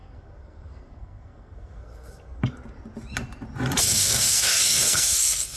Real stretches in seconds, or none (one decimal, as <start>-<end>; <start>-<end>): 2.4-3.8